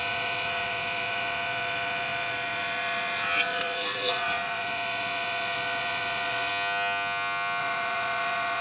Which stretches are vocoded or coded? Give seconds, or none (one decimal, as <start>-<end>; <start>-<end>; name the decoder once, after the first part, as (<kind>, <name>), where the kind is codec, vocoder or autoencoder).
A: 0.0-6.5 (vocoder, Vocos); 7.6-8.6